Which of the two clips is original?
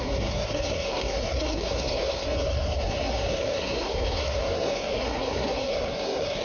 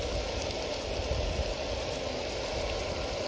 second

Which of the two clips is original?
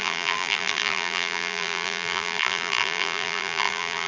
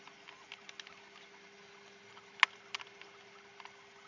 second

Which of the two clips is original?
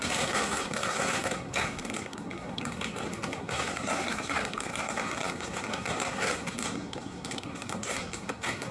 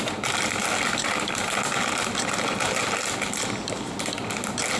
second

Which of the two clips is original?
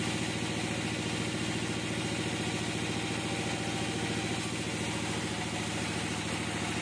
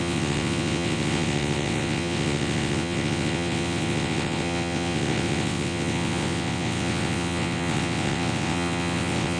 first